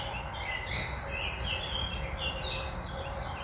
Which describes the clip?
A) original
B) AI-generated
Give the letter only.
A